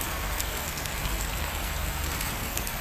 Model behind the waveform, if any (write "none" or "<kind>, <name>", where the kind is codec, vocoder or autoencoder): codec, SNAC